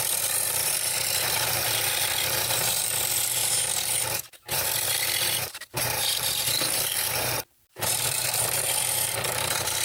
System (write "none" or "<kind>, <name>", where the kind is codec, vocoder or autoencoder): vocoder, BigVGAN v2